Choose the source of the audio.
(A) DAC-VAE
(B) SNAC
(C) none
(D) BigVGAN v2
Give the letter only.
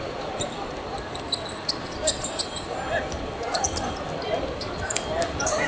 D